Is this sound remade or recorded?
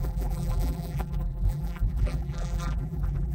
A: remade